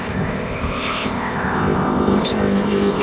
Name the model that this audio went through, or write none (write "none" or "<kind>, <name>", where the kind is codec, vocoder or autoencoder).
codec, ZipCodec